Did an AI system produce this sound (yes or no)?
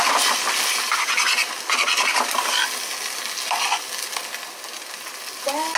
no